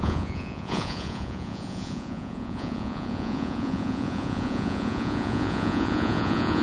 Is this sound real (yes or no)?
no